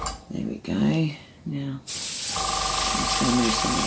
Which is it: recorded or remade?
recorded